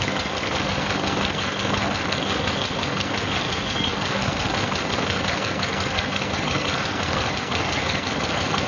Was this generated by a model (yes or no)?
yes